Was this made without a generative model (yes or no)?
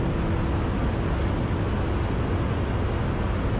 yes